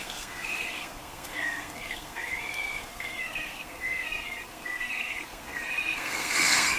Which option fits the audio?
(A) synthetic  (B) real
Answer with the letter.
A